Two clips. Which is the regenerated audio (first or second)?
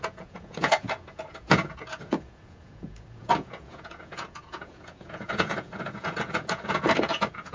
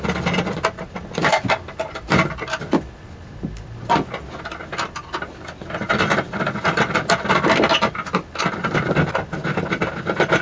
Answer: first